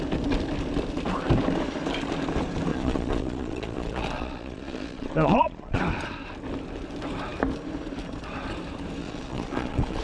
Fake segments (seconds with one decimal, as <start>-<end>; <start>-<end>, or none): 2.7-5.8; 9.0-10.0